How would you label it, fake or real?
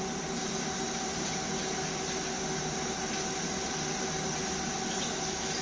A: real